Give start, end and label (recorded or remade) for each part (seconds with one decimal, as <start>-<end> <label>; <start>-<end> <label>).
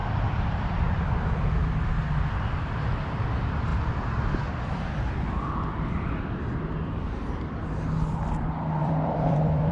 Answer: 0.0-0.8 remade; 0.8-8.8 recorded; 8.8-9.7 remade